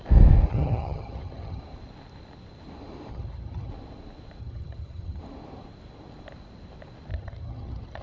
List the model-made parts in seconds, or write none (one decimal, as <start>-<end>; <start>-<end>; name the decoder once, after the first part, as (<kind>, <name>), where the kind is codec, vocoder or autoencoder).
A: 0.5-1.6 (vocoder, HiFi-GAN); 3.1-3.7; 4.4-5.2; 7.1-8.0